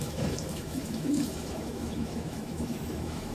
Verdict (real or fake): fake